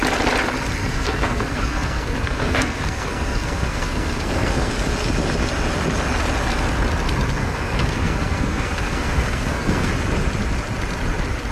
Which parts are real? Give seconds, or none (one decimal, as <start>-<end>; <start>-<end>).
0.0-0.8; 4.7-7.4; 9.9-11.5

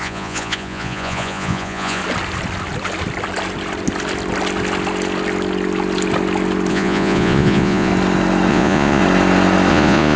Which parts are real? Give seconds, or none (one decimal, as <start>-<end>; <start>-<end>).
2.0-6.7; 7.9-8.5; 9.0-9.7